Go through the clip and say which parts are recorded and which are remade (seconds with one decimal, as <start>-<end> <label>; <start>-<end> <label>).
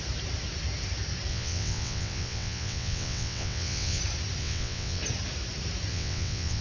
0.0-1.3 recorded; 1.3-4.0 remade; 4.0-4.4 recorded; 4.4-5.0 remade; 5.0-5.9 recorded; 5.9-6.6 remade